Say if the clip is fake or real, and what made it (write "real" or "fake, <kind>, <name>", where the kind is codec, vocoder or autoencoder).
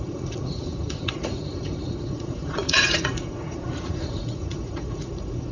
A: fake, vocoder, Vocos